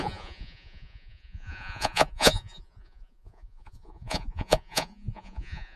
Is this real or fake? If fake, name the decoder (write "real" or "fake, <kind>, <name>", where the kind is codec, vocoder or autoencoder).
fake, vocoder, Vocos